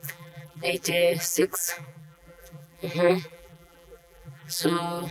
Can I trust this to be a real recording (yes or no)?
no